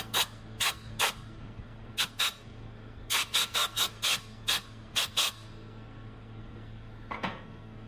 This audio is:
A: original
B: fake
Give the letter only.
B